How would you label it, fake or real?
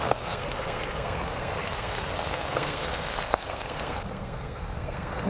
fake